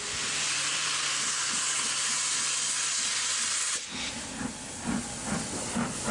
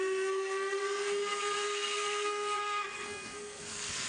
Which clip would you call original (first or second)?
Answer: first